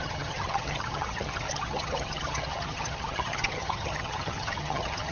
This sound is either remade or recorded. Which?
remade